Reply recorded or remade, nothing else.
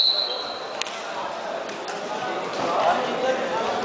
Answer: recorded